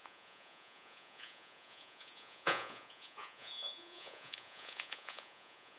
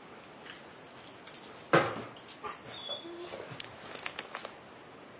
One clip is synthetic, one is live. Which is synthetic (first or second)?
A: first